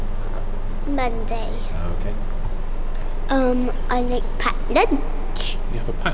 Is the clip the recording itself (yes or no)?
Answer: yes